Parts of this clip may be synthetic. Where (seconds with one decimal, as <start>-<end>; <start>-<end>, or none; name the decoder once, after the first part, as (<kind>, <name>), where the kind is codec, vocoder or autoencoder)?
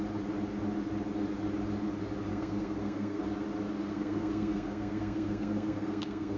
2.3-3.2 (codec, SNAC); 3.9-6.4